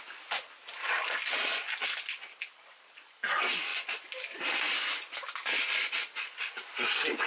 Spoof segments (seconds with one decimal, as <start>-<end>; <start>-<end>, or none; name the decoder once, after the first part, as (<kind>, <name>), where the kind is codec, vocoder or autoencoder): none